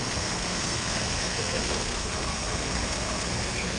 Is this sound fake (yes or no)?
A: yes